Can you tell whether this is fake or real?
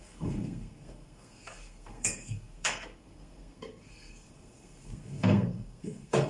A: fake